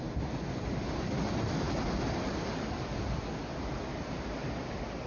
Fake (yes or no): no